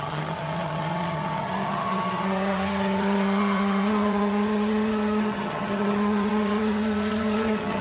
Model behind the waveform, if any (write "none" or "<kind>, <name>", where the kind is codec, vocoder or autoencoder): vocoder, HiFi-GAN